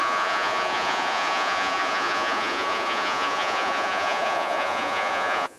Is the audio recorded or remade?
remade